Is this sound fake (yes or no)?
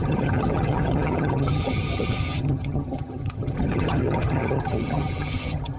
yes